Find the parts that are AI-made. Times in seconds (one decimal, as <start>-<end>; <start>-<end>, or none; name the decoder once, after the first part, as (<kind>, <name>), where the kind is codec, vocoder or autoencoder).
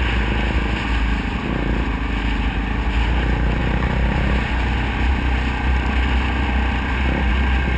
none